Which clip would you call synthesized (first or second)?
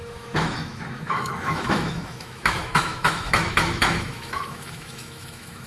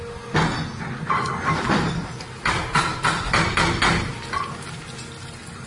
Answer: first